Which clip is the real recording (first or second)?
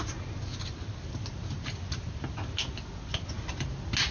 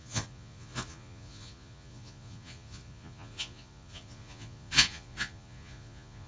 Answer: first